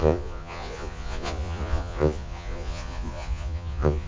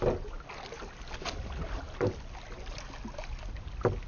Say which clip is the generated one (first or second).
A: first